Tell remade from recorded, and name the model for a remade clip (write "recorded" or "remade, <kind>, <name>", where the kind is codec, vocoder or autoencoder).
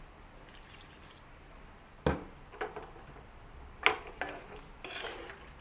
recorded